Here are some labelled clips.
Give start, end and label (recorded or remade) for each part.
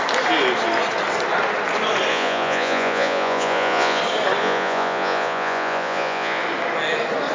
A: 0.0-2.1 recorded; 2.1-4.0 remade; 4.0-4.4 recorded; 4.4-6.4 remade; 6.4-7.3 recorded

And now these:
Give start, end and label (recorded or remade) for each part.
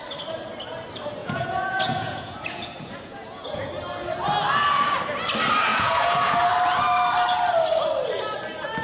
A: 0.0-1.2 recorded; 1.2-3.7 remade; 3.7-5.7 recorded; 5.7-6.4 remade; 6.4-8.8 recorded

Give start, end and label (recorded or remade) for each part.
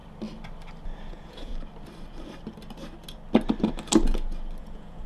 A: 0.0-1.1 recorded; 1.1-1.5 remade; 1.5-4.6 recorded; 4.6-5.1 remade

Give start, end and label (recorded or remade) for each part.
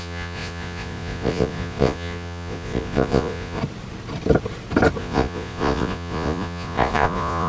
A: 0.0-3.6 remade; 3.6-5.0 recorded; 5.0-7.5 remade